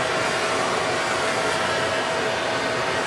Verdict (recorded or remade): recorded